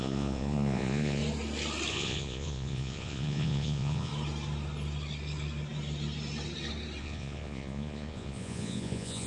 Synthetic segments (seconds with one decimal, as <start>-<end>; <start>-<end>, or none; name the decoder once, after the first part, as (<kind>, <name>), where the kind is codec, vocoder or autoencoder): 0.0-1.2 (vocoder, Vocos); 1.9-4.1; 7.0-9.3